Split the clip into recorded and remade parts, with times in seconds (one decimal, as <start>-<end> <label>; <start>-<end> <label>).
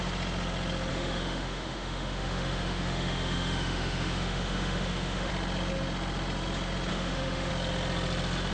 0.0-0.9 recorded; 0.9-5.3 remade; 5.3-6.9 recorded; 6.9-7.5 remade; 7.5-8.5 recorded